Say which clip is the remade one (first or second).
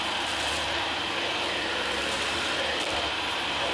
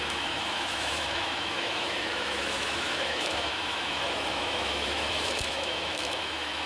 second